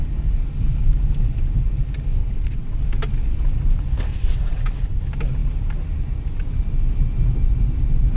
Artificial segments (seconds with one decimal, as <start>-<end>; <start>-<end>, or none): 2.2-2.8; 4.1-5.0